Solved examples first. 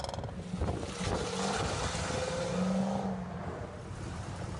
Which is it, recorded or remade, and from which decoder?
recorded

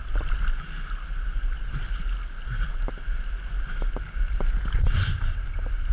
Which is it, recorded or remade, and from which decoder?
recorded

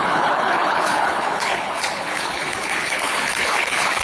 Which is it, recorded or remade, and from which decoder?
remade, codec, HILCodec